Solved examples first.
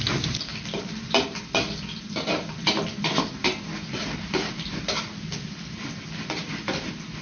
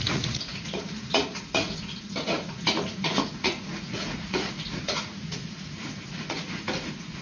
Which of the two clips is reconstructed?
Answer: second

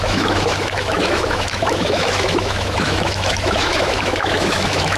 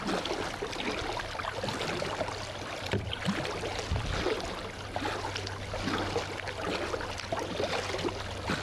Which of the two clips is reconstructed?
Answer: first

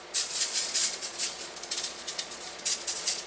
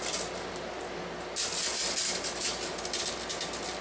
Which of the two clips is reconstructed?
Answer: first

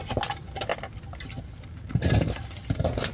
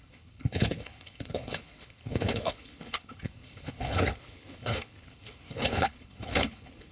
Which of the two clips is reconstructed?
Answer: second